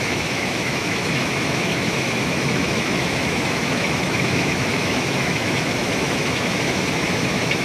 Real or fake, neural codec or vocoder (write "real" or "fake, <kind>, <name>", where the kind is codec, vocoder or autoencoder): fake, autoencoder, DAC-VAE